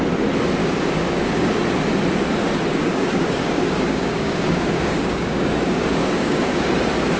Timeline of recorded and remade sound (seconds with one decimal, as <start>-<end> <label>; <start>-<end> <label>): 0.0-0.6 recorded; 0.6-1.6 remade; 1.6-2.7 recorded; 2.7-6.7 remade; 6.7-7.2 recorded